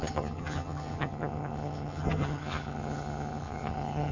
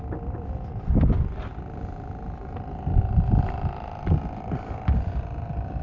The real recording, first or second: second